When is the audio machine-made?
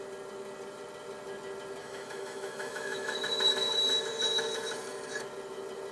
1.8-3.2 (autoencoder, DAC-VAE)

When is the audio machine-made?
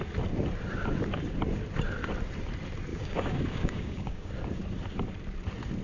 2.9-4.3 (codec, DAC)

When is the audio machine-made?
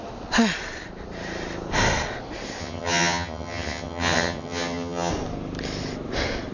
2.6-5.1 (vocoder, HiFi-GAN)